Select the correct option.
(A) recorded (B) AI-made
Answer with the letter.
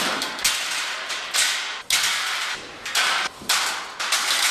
A